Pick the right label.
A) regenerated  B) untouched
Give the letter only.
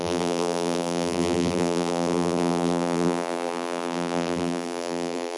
A